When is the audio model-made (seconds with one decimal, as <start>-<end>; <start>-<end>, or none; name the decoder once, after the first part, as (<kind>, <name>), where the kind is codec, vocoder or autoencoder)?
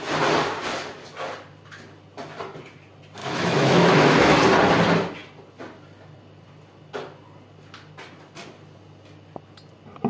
3.2-4.4 (autoencoder, DAC-VAE)